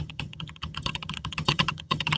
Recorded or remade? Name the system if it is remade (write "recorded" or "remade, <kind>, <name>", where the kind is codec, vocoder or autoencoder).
remade, vocoder, HiFi-GAN